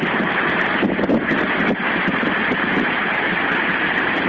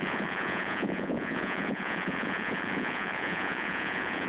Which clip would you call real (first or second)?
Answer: first